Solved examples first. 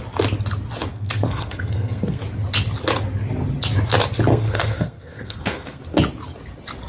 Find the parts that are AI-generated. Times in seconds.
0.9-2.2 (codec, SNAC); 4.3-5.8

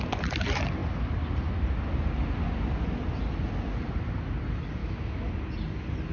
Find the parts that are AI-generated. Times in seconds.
4.8-5.3 (autoencoder, DAC-VAE)

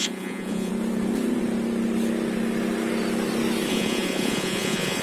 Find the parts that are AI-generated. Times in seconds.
0.0-0.7 (vocoder, Vocos); 3.7-5.0